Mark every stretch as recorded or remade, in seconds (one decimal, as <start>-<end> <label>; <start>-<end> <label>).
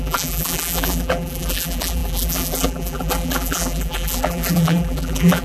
0.0-5.4 remade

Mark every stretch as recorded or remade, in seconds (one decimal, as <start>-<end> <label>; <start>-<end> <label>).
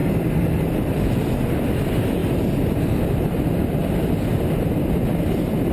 0.0-1.3 remade; 1.3-5.7 recorded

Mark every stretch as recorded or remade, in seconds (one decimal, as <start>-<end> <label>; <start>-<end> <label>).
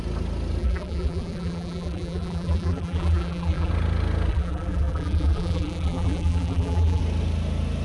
0.0-0.6 recorded; 0.6-3.7 remade; 3.7-4.3 recorded; 4.3-7.0 remade; 7.0-7.8 recorded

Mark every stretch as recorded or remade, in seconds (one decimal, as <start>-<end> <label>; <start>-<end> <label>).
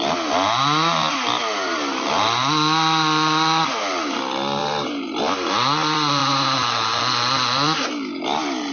0.0-4.6 recorded; 4.6-5.2 remade; 5.2-6.2 recorded; 6.2-7.0 remade; 7.0-8.7 recorded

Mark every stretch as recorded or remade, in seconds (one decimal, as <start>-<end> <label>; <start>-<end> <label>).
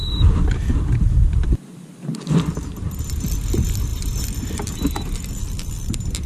0.0-3.0 remade; 3.0-3.9 recorded; 3.9-4.7 remade; 4.7-6.3 recorded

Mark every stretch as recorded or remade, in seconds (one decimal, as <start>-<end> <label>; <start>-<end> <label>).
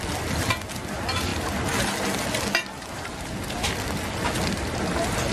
0.0-5.3 recorded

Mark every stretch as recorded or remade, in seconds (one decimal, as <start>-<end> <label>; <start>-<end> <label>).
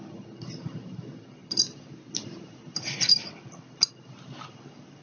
0.0-5.0 recorded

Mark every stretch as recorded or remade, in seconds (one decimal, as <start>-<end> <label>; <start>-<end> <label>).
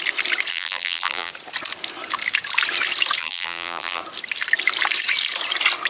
0.0-0.5 recorded; 0.5-1.3 remade; 1.3-3.2 recorded; 3.2-4.0 remade; 4.0-5.9 recorded